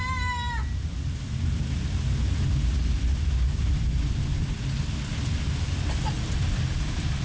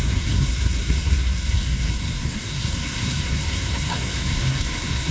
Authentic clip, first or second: first